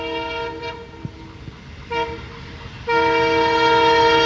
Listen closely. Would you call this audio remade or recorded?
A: recorded